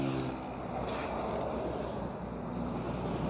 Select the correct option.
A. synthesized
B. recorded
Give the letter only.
B